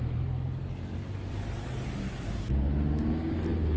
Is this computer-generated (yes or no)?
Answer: no